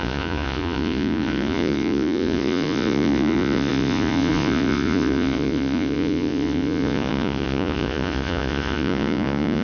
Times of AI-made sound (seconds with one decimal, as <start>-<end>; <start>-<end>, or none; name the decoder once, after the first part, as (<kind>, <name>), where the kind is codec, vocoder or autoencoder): 0.0-9.6 (vocoder, Vocos)

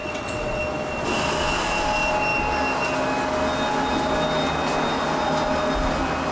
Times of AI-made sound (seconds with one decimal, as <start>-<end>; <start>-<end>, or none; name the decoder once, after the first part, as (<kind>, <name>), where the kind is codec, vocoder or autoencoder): 0.0-0.6 (vocoder, WaveNeXt)

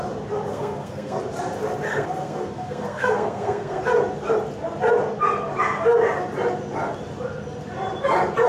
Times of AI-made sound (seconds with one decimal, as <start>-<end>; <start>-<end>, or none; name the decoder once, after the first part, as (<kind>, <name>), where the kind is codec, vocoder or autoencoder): 0.5-1.2 (codec, SNAC); 1.9-3.8